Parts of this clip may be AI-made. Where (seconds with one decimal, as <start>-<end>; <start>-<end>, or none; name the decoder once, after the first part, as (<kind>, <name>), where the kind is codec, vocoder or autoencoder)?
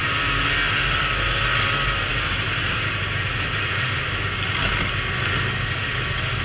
none